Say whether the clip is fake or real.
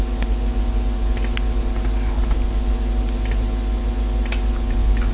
real